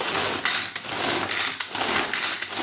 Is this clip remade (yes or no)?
no